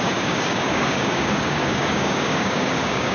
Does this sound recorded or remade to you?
remade